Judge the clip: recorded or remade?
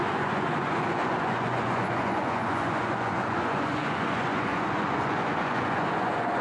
remade